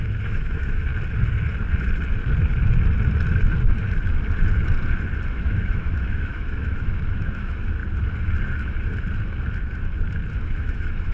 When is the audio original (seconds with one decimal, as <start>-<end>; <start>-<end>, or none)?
0.9-5.3; 7.8-10.4